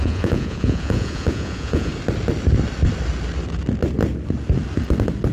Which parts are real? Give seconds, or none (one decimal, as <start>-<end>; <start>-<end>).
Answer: 1.9-5.3